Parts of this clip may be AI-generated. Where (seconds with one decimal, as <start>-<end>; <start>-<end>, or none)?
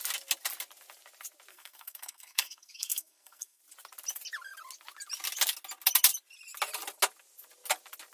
1.5-3.6